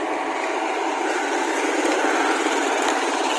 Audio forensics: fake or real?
fake